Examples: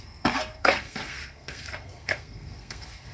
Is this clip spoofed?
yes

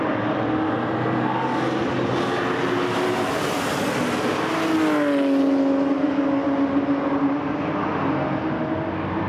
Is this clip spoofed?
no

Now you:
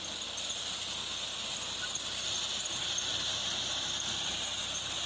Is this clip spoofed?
no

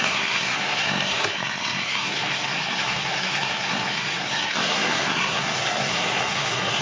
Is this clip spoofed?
yes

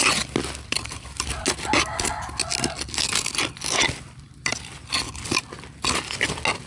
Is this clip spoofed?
no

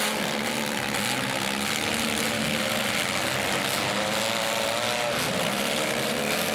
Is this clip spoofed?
no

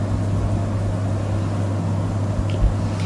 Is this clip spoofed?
no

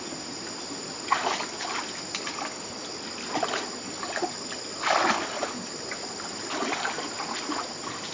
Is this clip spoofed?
no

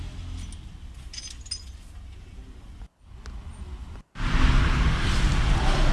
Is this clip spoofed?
no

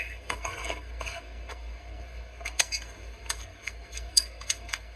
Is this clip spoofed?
yes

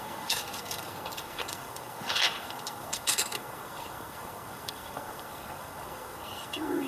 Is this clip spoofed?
yes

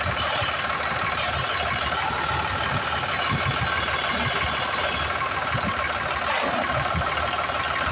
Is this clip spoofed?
no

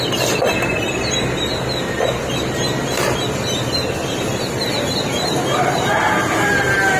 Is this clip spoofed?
no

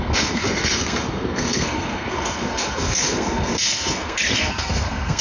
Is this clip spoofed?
yes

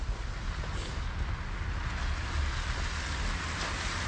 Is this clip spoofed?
no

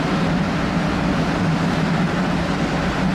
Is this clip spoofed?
no